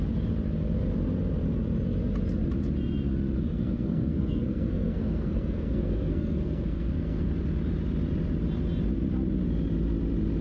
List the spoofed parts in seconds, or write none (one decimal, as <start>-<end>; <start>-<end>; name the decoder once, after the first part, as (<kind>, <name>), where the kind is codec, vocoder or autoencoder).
3.5-7.3 (codec, SNAC)